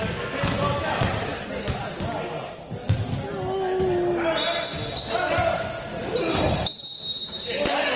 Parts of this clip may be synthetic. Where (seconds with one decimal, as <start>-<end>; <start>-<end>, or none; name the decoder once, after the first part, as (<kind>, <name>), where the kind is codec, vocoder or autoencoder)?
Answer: none